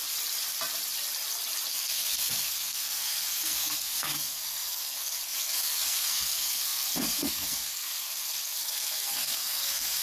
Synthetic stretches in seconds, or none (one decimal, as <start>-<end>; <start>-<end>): 1.7-10.0